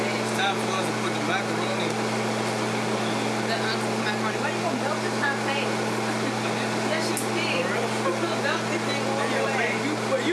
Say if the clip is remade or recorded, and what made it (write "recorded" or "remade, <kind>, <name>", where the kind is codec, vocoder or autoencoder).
recorded